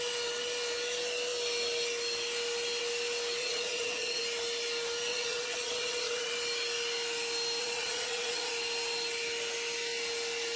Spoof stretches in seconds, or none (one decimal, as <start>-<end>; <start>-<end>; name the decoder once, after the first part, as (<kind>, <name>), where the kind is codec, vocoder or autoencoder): 3.4-4.2 (vocoder, WaveNeXt); 5.1-6.3; 7.6-8.5

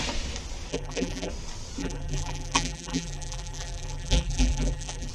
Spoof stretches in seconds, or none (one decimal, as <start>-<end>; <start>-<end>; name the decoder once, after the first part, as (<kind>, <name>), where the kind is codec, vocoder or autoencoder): 0.7-1.3 (vocoder, BigVGAN v2); 1.8-5.1

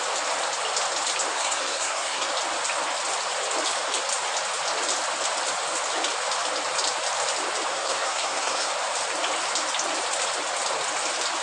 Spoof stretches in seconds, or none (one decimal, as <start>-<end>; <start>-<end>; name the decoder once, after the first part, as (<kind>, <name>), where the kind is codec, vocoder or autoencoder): 1.3-2.3 (codec, SNAC); 7.7-8.7

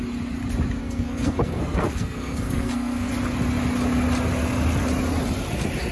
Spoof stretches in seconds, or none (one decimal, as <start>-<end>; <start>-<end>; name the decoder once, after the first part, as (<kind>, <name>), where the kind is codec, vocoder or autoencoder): 0.8-3.1 (codec, SNAC)